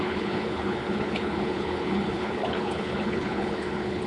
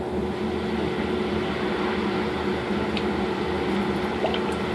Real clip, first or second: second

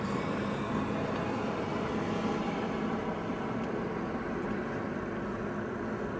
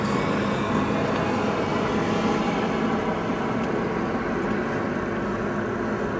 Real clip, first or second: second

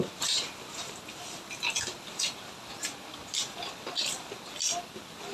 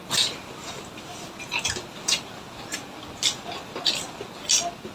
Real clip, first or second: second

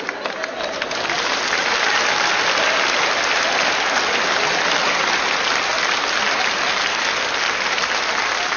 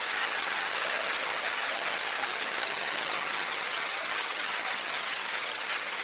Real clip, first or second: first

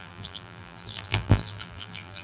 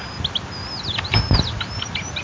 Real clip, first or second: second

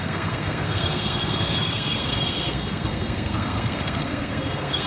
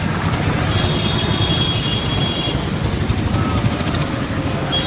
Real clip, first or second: second